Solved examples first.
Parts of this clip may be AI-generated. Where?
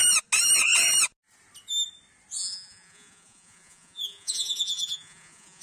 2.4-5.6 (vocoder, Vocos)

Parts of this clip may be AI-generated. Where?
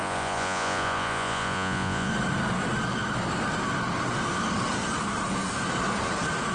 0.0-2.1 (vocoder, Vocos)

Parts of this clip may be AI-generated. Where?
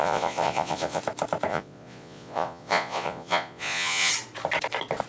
0.0-1.0 (vocoder, Vocos); 1.5-4.1